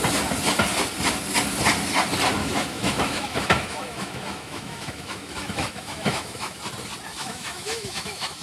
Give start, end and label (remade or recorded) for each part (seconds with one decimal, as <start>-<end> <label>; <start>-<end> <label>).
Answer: 0.0-2.4 recorded; 2.4-6.6 remade; 6.6-7.1 recorded; 7.1-8.4 remade